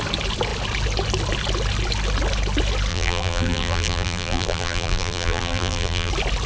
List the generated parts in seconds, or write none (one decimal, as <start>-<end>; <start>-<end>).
2.9-6.1